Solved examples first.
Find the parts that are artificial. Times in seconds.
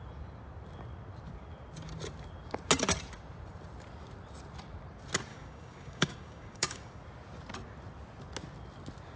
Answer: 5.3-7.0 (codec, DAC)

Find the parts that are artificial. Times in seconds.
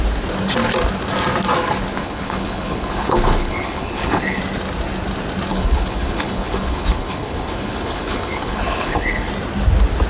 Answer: 2.0-4.4 (codec, HILCodec); 5.5-9.3